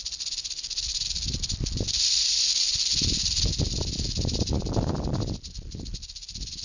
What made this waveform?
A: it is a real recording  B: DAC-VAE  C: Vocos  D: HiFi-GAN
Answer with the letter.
A